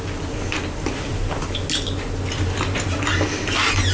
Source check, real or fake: real